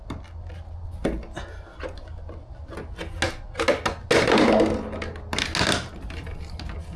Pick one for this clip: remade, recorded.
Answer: recorded